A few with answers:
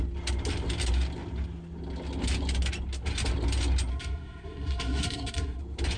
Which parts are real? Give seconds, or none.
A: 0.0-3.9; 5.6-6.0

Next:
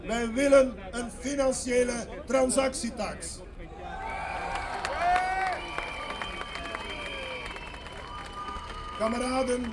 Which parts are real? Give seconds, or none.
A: 0.0-8.4; 9.0-9.7

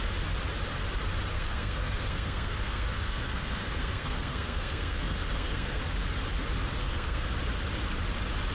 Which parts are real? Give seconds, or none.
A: 0.0-1.3; 5.8-6.8; 7.3-8.5

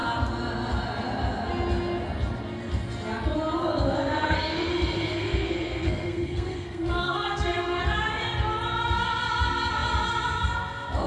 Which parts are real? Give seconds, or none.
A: 0.0-3.6; 7.8-11.1

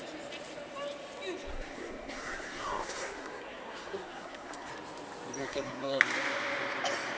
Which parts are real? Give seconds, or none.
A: 0.0-1.5; 4.7-5.4; 6.0-7.2

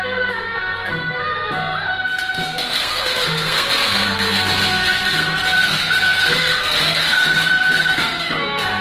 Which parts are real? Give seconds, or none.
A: 1.2-2.0

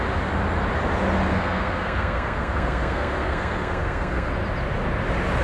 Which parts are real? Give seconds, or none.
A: 0.0-1.3; 4.3-5.4

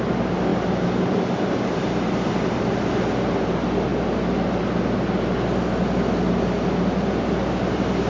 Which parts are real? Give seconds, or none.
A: 0.0-8.1